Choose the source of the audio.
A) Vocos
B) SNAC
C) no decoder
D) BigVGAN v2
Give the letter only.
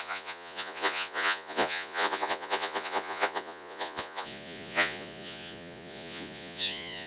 A